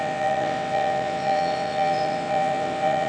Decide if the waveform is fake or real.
fake